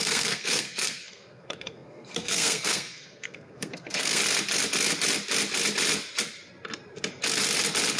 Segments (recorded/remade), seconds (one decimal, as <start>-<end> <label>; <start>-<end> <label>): 0.0-4.2 remade; 4.2-8.0 recorded